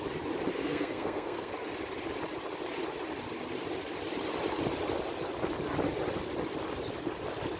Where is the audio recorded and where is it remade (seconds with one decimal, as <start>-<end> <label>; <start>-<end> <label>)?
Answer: 0.0-0.6 recorded; 0.6-1.5 remade; 1.5-7.6 recorded